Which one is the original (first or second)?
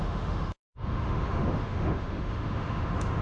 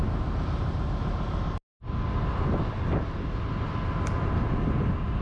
second